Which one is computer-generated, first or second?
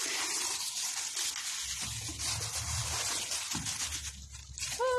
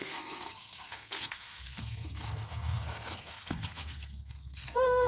second